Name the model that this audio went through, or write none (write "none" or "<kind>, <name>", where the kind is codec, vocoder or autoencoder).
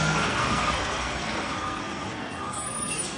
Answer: codec, SNAC